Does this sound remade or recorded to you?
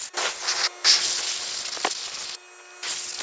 recorded